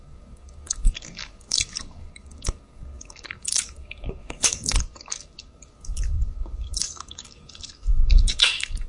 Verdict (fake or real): fake